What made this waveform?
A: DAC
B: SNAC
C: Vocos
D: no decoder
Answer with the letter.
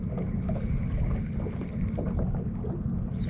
D